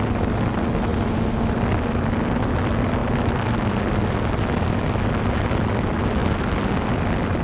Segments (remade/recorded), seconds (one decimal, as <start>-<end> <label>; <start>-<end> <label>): 0.0-7.4 recorded